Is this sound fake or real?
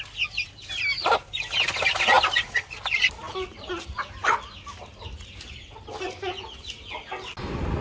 real